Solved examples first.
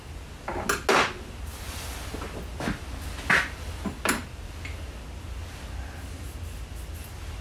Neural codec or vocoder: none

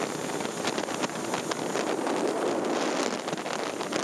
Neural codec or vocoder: none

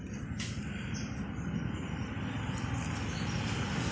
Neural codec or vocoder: none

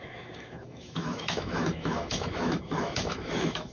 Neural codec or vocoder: autoencoder, DAC-VAE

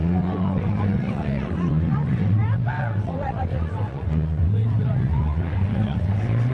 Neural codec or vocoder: vocoder, WaveNeXt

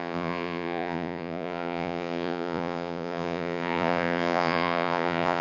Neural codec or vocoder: vocoder, Vocos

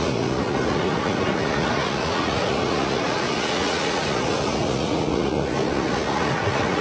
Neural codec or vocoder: vocoder, Vocos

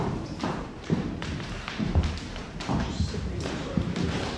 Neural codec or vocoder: vocoder, BigVGAN v2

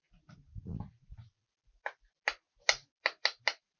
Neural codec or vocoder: none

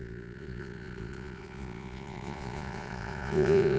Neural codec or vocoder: vocoder, Vocos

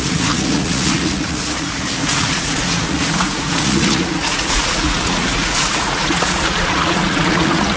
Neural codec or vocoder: vocoder, Vocos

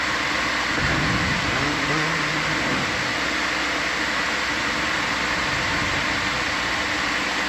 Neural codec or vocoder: none